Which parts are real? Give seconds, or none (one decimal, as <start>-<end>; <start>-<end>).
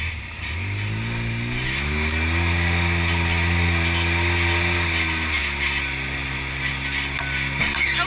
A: 0.0-8.1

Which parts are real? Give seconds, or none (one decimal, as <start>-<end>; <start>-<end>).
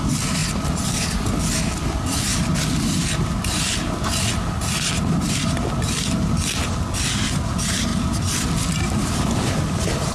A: 0.0-10.1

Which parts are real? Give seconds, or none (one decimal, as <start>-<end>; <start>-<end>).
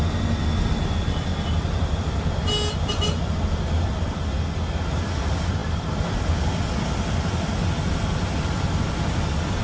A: 0.0-1.3; 2.2-5.6; 6.5-9.6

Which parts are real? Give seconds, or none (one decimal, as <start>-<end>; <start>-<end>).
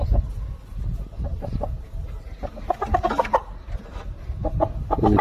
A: 0.0-1.3; 2.5-5.2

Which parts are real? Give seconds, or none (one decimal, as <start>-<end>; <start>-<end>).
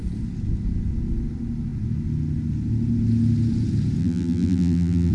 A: 0.0-4.0